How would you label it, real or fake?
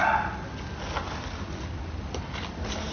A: real